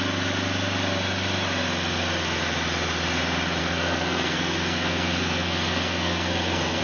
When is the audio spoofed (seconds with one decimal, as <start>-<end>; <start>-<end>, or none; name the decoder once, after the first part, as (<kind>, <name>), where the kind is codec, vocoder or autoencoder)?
3.6-6.8 (codec, SNAC)